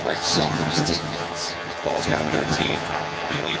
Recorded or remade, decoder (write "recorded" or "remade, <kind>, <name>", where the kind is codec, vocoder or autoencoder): remade, vocoder, HiFi-GAN